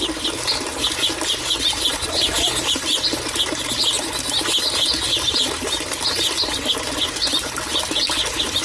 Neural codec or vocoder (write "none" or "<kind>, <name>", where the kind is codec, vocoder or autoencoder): none